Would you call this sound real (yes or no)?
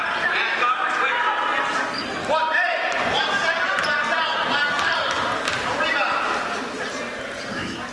yes